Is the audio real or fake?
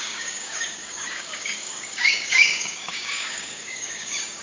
fake